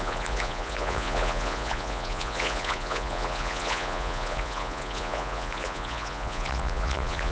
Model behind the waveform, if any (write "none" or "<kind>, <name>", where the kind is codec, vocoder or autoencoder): vocoder, Vocos